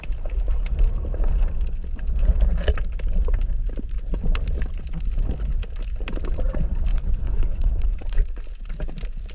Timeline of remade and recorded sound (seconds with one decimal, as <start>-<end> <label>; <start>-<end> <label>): 0.0-6.9 recorded; 6.9-8.3 remade; 8.3-9.3 recorded